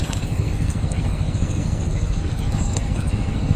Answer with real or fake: fake